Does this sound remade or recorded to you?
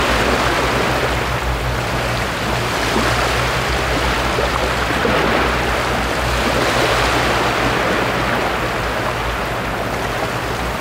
recorded